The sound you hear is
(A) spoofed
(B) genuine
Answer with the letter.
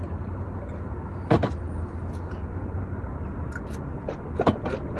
B